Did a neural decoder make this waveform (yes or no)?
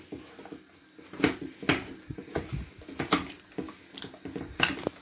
no